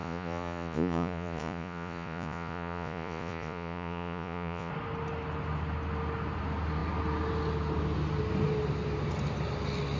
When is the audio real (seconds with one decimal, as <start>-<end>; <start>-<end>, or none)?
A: 4.7-10.0